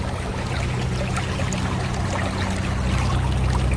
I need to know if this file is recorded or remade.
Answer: recorded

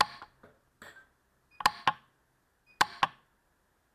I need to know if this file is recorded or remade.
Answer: recorded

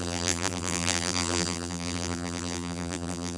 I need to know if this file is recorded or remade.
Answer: remade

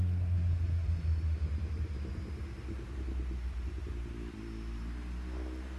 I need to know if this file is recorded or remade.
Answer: recorded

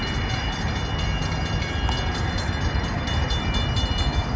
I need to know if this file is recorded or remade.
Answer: recorded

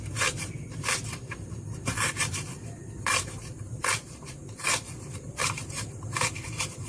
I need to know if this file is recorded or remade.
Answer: remade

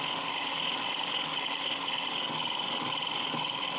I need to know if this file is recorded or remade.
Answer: recorded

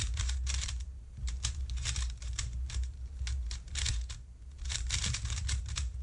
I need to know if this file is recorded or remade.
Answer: remade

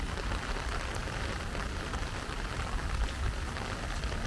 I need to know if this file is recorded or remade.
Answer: recorded